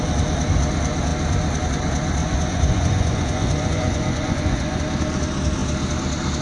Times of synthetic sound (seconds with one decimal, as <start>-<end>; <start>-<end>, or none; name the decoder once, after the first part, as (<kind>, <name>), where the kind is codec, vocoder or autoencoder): 2.2-4.8 (vocoder, Vocos)